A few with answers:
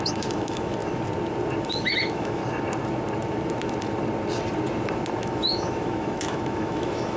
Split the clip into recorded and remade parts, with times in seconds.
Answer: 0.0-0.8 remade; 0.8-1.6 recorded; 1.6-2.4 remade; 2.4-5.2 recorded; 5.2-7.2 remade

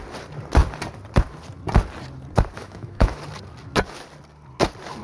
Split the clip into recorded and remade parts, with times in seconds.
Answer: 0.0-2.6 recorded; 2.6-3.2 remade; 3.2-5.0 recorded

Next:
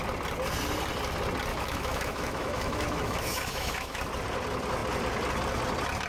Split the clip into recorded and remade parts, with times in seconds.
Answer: 0.0-1.5 recorded; 1.5-4.0 remade; 4.0-6.1 recorded

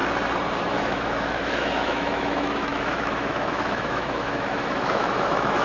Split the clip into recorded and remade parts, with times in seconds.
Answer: 0.0-0.6 recorded; 0.6-5.6 remade

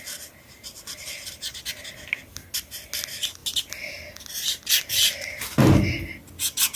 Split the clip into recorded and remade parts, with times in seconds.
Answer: 0.0-6.8 recorded

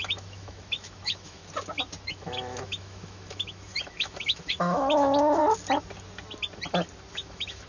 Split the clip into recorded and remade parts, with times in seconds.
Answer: 0.0-1.4 remade; 1.4-2.1 recorded; 2.1-5.4 remade; 5.4-7.1 recorded; 7.1-7.7 remade

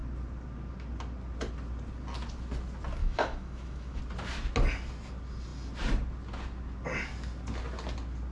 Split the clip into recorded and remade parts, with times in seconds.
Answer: 0.0-3.0 recorded; 3.0-4.0 remade; 4.0-8.3 recorded

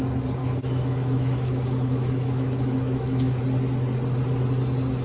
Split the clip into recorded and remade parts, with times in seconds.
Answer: 0.0-0.4 recorded; 0.4-3.4 remade; 3.4-5.0 recorded